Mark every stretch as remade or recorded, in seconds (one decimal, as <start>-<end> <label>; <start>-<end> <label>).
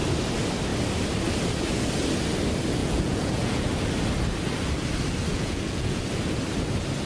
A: 0.0-2.8 recorded; 2.8-3.7 remade; 3.7-5.3 recorded; 5.3-6.0 remade; 6.0-7.1 recorded